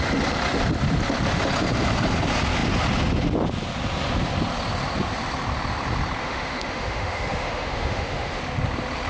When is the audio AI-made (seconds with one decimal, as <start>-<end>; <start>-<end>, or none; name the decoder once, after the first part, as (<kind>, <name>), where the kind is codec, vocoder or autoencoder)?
6.2-8.4 (autoencoder, DAC-VAE)